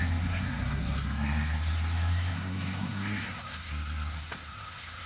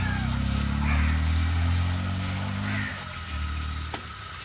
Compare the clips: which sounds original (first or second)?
second